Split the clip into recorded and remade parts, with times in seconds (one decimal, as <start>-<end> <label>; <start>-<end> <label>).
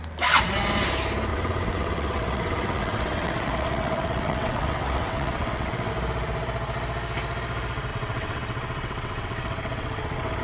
0.0-1.3 recorded; 1.3-5.9 remade; 5.9-7.9 recorded; 7.9-10.4 remade